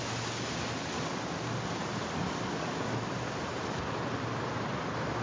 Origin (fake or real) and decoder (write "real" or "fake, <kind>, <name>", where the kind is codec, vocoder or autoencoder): real